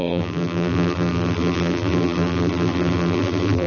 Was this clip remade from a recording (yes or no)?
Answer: yes